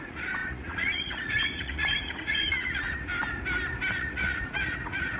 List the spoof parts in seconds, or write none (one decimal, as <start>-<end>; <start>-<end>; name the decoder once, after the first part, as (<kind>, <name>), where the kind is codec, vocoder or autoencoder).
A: 0.0-3.1 (vocoder, Vocos); 3.9-5.2